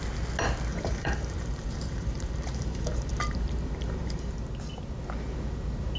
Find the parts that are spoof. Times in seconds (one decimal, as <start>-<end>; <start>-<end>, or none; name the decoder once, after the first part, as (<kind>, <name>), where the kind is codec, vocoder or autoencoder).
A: 0.7-4.3 (vocoder, BigVGAN v2)